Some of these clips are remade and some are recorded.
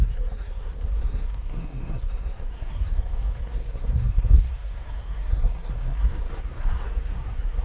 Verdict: remade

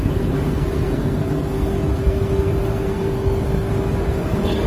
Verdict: remade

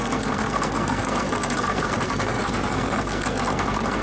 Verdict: remade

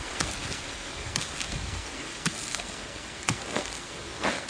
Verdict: remade